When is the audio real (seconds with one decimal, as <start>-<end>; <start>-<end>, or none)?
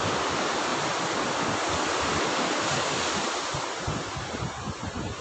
0.0-5.2